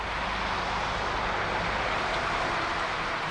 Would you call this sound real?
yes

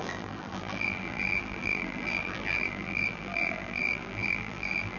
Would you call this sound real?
no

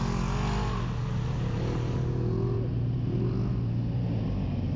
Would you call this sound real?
yes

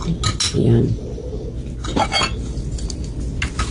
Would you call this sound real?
yes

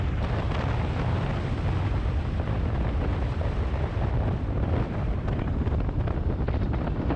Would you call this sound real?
no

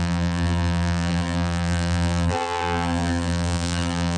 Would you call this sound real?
no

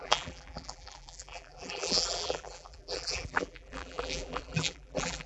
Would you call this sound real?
no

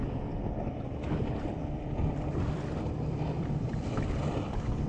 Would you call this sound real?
no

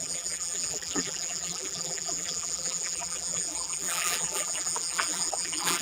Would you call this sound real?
no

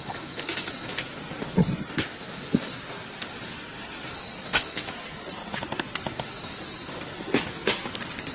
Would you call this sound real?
yes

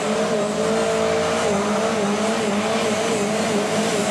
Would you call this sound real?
yes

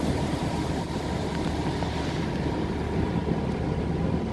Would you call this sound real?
yes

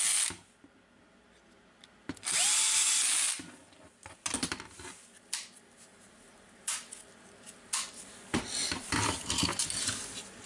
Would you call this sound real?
yes